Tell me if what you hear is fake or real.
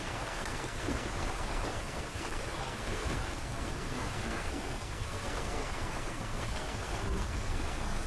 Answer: fake